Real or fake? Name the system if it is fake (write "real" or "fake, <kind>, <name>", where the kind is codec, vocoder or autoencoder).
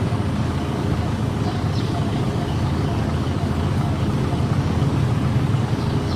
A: fake, codec, DAC